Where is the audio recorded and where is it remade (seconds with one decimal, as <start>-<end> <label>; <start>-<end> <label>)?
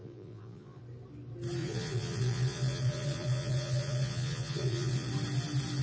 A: 0.0-0.8 remade; 0.8-1.6 recorded; 1.6-5.1 remade; 5.1-5.8 recorded